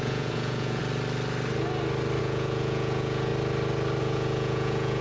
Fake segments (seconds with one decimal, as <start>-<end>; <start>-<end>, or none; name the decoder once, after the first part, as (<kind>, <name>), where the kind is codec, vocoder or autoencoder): 0.0-0.8 (vocoder, Vocos); 2.2-3.3; 4.0-5.0